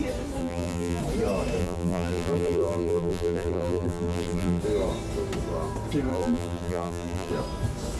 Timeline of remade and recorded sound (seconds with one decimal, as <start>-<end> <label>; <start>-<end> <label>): 0.0-0.4 recorded; 0.4-1.0 remade; 1.0-1.6 recorded; 1.6-4.6 remade; 4.6-6.1 recorded; 6.1-7.3 remade; 7.3-8.0 recorded